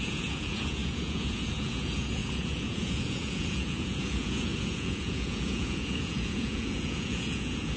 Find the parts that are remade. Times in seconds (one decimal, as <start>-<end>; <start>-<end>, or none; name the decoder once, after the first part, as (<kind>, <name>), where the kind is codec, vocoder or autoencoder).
0.0-7.8 (vocoder, Vocos)